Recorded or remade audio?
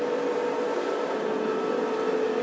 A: recorded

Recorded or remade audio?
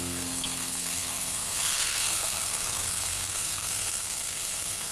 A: remade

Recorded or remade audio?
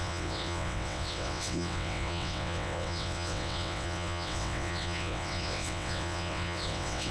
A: remade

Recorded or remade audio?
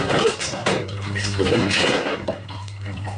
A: remade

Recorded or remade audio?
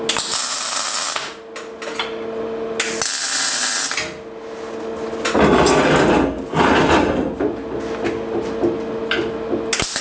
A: recorded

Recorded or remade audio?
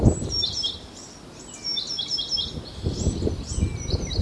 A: recorded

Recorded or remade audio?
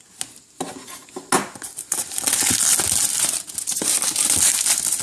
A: recorded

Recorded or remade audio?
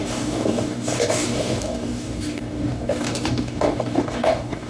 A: remade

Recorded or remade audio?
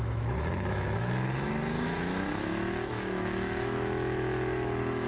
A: remade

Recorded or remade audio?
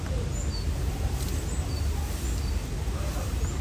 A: recorded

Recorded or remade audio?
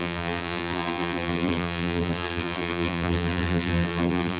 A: remade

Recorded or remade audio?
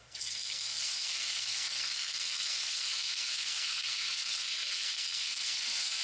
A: remade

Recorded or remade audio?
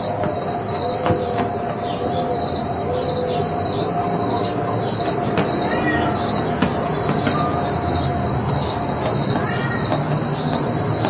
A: recorded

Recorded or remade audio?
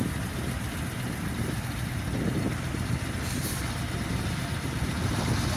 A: recorded